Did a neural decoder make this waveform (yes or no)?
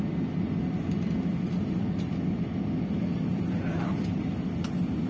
no